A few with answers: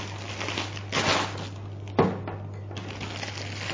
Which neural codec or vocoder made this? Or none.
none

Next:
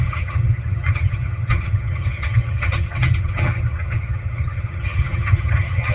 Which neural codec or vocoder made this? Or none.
vocoder, HiFi-GAN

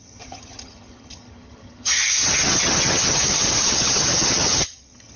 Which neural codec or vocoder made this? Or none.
vocoder, HiFi-GAN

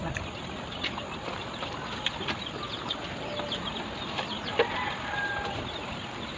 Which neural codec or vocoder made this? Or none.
none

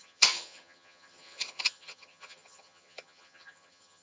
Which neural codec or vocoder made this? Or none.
vocoder, HiFi-GAN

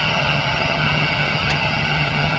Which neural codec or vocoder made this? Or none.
vocoder, HiFi-GAN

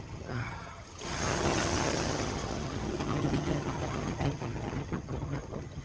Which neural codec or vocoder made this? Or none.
vocoder, HiFi-GAN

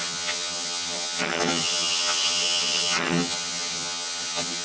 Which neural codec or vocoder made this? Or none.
vocoder, HiFi-GAN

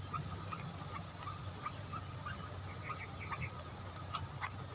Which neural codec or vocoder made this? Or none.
none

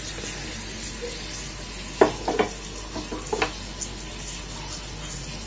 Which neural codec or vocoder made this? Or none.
none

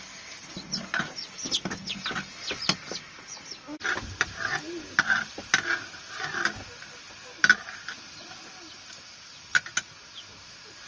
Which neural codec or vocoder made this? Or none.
none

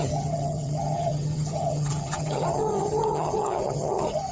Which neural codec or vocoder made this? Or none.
vocoder, HiFi-GAN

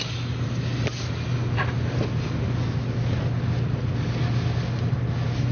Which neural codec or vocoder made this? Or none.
none